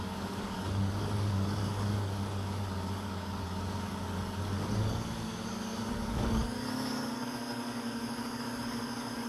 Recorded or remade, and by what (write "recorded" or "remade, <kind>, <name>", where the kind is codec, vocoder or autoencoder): remade, codec, DAC